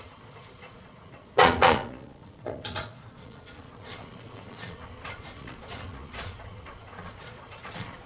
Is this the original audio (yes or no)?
no